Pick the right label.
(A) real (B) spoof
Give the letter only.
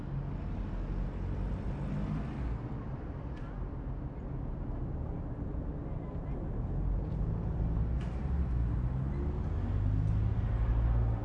A